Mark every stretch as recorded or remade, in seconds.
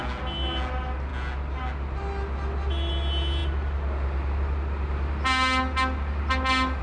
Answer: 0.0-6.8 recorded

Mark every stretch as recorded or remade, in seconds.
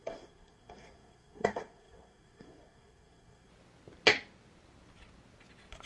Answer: 0.0-3.5 remade; 3.5-5.9 recorded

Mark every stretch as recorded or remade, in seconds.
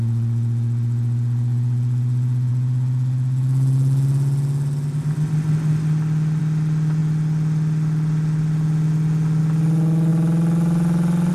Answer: 0.0-11.3 recorded